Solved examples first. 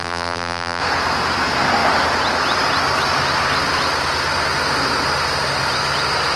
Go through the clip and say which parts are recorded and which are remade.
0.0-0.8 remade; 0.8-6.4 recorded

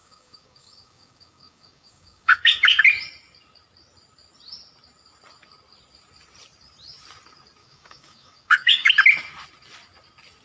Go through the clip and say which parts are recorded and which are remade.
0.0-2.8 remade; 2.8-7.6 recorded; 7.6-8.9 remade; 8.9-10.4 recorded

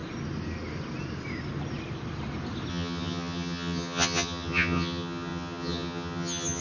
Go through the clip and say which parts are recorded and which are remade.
0.0-2.7 recorded; 2.7-6.6 remade

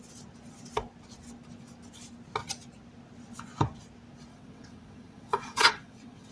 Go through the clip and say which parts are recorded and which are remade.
0.0-4.3 recorded; 4.3-6.3 remade